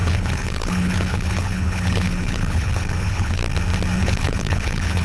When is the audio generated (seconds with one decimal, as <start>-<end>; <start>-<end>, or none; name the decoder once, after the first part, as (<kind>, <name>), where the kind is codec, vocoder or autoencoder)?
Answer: 0.0-3.4 (codec, HILCodec); 4.0-5.0